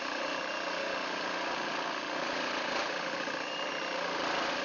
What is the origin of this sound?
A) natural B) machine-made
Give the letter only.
A